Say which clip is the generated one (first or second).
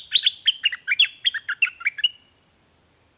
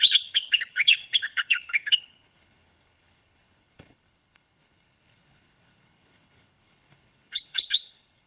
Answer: second